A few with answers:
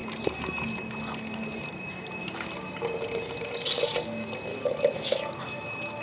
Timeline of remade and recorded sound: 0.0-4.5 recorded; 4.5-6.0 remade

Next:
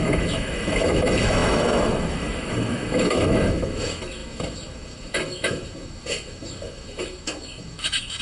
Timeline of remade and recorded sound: 0.0-8.2 remade